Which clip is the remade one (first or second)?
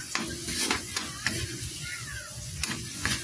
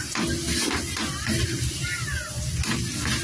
first